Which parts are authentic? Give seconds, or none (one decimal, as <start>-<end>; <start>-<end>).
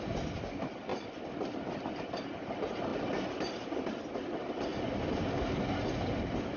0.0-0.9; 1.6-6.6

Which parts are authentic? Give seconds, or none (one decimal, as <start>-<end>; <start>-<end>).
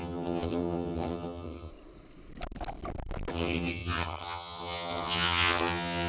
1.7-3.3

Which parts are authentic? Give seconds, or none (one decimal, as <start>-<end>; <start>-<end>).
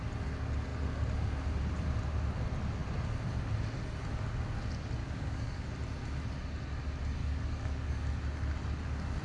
0.0-5.0; 5.7-7.2; 8.0-9.2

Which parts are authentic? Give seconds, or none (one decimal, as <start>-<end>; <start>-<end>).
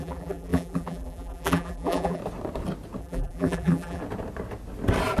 2.2-3.0; 4.0-5.2